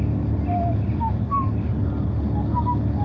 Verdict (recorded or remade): recorded